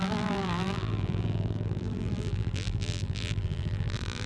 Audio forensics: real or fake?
fake